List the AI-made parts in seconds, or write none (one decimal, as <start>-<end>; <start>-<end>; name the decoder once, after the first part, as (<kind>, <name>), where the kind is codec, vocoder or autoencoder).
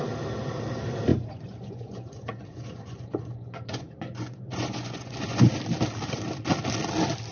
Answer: 1.1-5.5 (vocoder, Vocos)